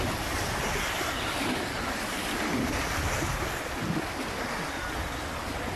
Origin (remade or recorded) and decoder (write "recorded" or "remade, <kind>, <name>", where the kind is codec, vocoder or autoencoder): recorded